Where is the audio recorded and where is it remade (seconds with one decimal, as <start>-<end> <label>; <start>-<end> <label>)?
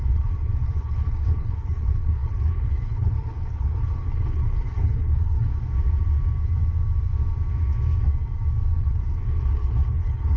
0.0-5.5 remade; 5.5-8.8 recorded; 8.8-10.4 remade